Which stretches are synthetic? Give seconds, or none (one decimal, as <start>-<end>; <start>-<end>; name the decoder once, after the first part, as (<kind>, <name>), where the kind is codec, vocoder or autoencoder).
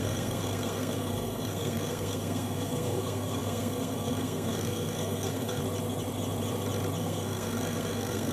0.0-5.6 (codec, SNAC); 7.0-8.3